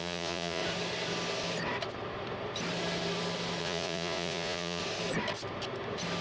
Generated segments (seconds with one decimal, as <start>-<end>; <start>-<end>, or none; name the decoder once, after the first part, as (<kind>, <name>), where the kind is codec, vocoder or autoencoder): 0.0-0.6 (vocoder, Vocos); 3.6-4.8